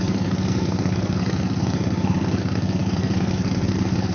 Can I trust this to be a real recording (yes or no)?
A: no